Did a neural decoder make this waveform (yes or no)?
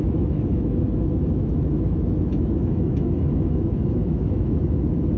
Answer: yes